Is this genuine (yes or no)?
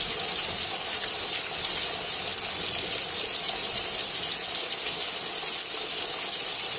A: yes